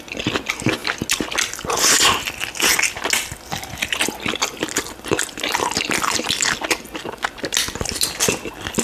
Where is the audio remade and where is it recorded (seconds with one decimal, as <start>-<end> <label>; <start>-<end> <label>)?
0.0-8.8 recorded